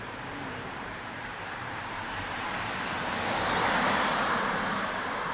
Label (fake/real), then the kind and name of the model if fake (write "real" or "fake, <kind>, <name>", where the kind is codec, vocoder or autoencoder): fake, vocoder, BigVGAN v2